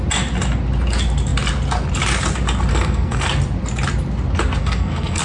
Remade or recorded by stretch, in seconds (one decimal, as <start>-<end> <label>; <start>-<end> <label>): 0.0-2.7 recorded; 2.7-3.3 remade; 3.3-4.6 recorded; 4.6-5.2 remade